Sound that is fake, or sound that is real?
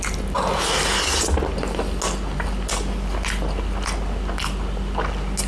real